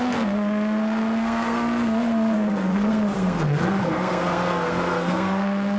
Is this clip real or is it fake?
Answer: fake